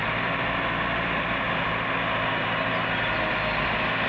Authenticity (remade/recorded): recorded